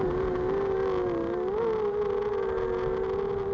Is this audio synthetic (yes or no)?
no